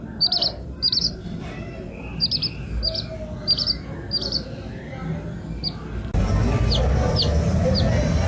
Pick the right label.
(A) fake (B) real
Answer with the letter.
B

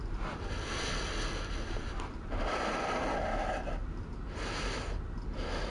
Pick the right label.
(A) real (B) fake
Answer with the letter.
A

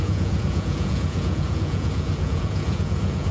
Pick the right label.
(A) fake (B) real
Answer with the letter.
A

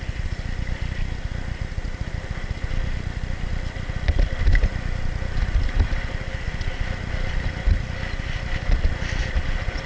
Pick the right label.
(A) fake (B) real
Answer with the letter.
B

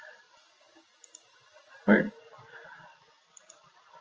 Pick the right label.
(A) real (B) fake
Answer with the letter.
A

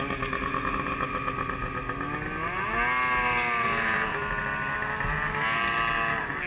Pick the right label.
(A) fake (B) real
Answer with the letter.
B